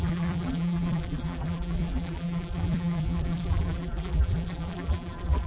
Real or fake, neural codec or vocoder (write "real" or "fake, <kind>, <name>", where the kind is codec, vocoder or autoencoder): fake, vocoder, BigVGAN v2